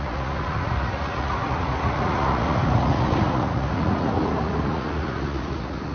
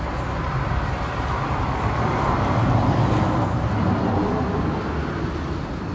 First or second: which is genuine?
second